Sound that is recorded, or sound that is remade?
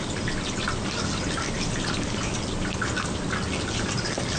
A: recorded